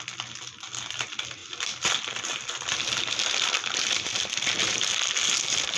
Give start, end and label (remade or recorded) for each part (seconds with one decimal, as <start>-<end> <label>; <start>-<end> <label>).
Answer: 0.0-1.4 recorded; 1.4-4.7 remade; 4.7-5.8 recorded